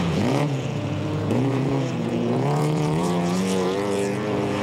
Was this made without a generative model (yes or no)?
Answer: no